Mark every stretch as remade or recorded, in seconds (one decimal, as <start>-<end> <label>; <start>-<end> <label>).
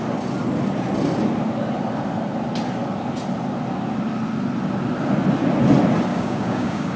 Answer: 0.0-6.1 recorded; 6.1-7.0 remade